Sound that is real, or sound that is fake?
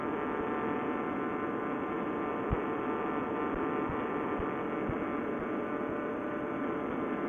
real